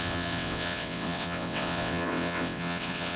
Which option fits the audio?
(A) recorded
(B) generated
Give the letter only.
B